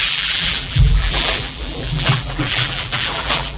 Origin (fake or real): fake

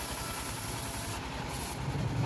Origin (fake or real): real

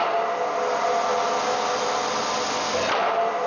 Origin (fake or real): real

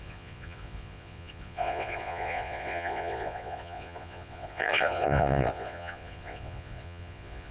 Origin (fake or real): fake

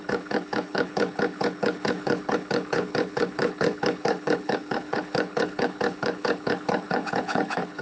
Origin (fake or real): fake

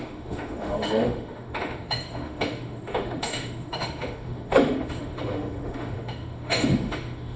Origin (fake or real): fake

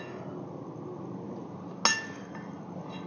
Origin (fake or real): real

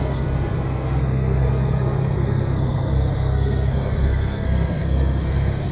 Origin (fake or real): fake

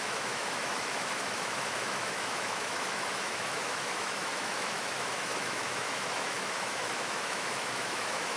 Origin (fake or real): fake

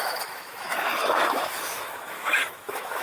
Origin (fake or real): fake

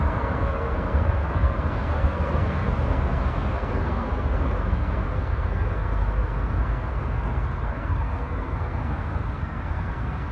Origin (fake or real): fake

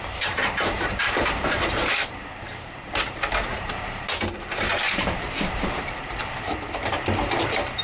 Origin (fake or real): fake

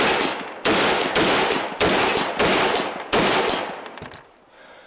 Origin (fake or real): real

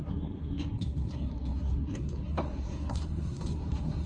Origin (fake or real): fake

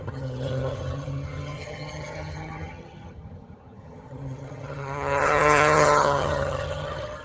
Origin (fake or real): fake